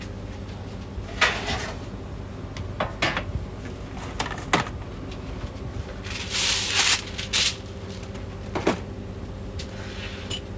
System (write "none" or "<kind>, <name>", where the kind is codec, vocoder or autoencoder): none